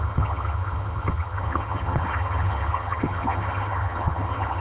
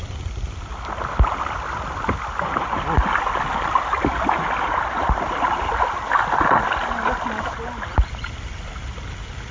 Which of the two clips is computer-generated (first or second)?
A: first